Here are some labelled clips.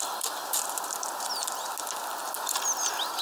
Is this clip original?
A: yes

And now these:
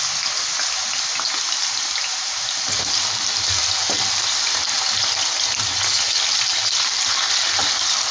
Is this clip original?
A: yes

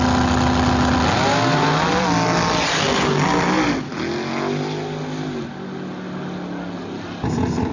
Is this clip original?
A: yes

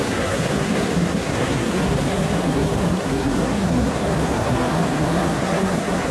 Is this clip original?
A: no